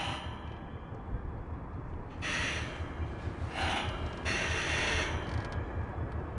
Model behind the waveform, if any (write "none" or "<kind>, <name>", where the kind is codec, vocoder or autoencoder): none